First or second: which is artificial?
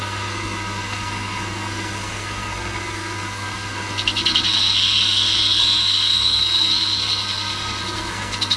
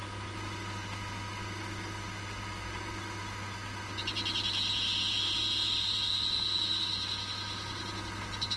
first